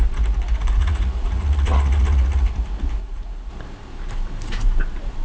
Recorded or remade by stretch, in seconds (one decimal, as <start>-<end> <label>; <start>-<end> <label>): 0.0-0.8 recorded; 0.8-2.5 remade; 2.5-3.0 recorded; 3.0-3.5 remade; 3.5-5.2 recorded